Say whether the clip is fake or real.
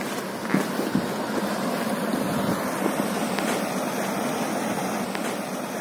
real